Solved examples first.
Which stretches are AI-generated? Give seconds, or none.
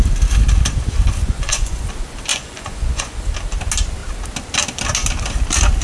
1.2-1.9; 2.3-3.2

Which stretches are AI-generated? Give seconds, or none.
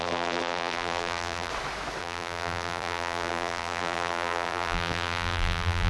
0.0-1.5; 2.0-5.9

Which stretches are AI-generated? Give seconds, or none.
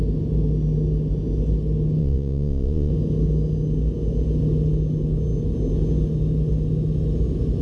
2.0-2.9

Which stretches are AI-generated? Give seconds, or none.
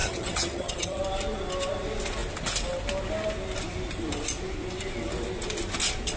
0.0-1.0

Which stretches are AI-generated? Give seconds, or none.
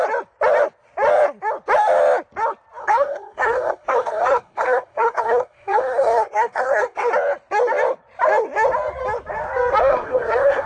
2.8-7.1; 9.8-10.7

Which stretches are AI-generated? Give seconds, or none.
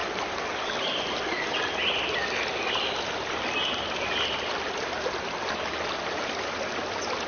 none